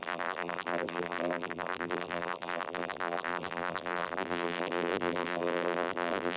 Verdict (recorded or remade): remade